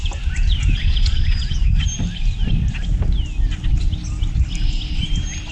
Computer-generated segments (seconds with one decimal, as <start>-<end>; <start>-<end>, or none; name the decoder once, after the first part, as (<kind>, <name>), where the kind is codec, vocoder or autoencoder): 0.0-1.8 (vocoder, Vocos)